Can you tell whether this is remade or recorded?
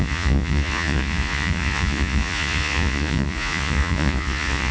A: remade